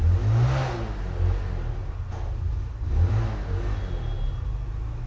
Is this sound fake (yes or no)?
no